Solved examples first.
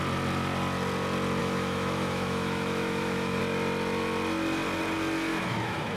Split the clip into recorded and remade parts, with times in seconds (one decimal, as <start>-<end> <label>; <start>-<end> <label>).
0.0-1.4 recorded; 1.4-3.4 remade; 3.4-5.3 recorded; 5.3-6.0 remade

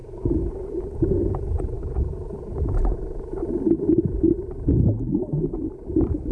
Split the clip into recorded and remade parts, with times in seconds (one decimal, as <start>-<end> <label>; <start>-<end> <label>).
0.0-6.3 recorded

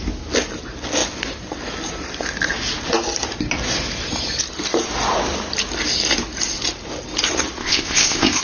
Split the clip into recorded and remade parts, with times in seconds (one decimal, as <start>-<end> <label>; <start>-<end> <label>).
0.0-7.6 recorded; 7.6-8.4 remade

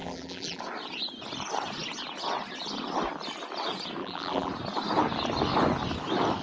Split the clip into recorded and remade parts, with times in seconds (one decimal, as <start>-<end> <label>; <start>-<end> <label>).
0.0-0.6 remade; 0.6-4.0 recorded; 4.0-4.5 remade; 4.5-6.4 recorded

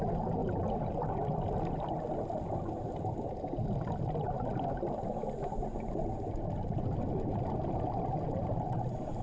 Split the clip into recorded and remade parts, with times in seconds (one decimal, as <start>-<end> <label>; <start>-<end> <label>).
0.0-9.2 recorded